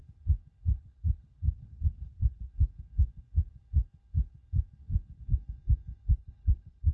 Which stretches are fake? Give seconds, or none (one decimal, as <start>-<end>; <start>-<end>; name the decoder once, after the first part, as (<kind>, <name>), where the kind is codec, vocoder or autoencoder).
0.6-2.5 (codec, HILCodec); 6.0-6.9